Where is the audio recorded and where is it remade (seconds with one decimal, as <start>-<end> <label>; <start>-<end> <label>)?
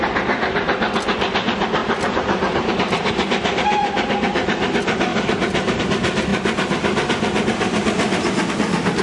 0.0-9.0 recorded